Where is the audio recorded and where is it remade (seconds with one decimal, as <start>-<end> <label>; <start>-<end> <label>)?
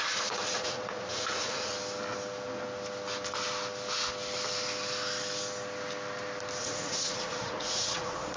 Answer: 0.0-1.7 remade; 1.7-6.6 recorded; 6.6-8.4 remade